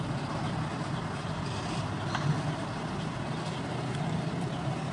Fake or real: real